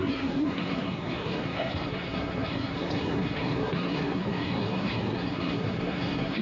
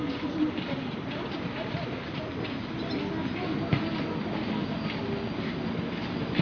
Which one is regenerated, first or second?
first